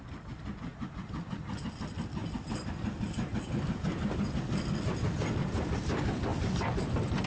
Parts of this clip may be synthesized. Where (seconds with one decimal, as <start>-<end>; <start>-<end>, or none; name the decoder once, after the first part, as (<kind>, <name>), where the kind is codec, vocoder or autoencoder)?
none